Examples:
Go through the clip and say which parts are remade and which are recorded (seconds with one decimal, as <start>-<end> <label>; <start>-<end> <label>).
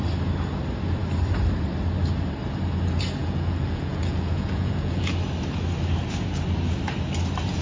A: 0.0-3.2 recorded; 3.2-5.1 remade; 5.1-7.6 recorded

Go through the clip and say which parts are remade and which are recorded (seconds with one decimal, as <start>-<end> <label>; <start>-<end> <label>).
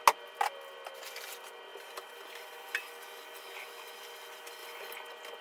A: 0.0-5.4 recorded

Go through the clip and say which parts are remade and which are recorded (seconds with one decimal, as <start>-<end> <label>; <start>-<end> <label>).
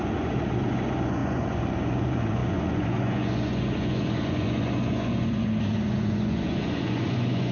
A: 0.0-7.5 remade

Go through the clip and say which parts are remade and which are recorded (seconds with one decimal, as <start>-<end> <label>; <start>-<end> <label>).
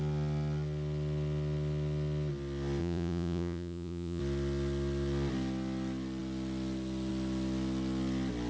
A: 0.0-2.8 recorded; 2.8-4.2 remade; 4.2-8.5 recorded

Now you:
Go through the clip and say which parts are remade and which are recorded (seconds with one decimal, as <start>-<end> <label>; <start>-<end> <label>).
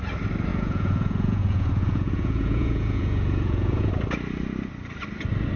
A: 0.0-0.5 recorded; 0.5-3.9 remade; 3.9-5.6 recorded